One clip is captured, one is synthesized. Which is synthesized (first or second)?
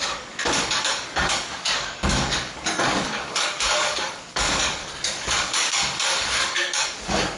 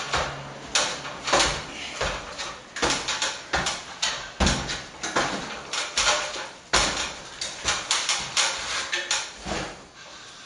first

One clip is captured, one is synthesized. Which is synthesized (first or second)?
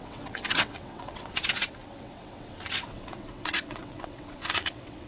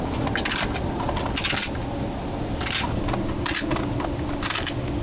first